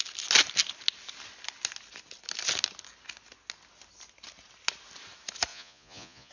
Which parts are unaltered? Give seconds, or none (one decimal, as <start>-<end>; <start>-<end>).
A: 0.0-5.5